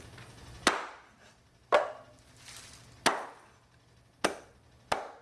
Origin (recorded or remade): recorded